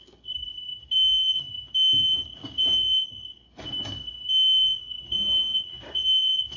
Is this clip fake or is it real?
fake